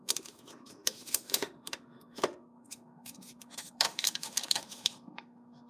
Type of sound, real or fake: fake